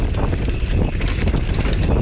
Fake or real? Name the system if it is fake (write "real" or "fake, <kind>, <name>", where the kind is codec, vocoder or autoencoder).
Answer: real